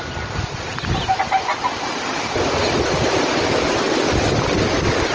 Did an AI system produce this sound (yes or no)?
no